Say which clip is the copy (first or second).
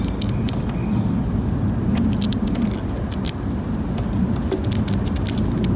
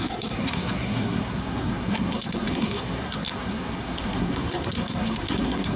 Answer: second